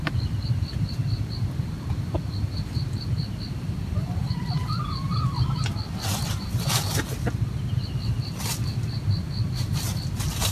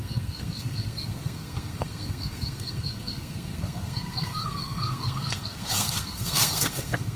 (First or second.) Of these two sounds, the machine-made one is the second